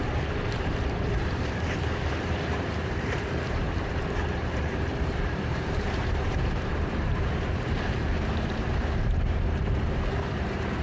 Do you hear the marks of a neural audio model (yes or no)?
yes